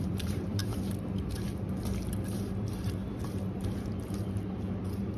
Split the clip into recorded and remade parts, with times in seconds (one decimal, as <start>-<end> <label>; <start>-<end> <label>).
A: 0.0-0.6 remade; 0.6-2.4 recorded; 2.4-3.0 remade; 3.0-4.0 recorded; 4.0-5.2 remade